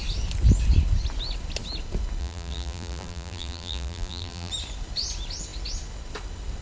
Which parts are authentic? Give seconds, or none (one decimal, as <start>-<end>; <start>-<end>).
0.0-2.2; 4.5-6.6